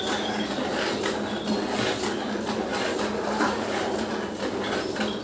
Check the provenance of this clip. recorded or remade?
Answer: recorded